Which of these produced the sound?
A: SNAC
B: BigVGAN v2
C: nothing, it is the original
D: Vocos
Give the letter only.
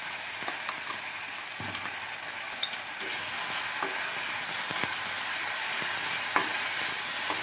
C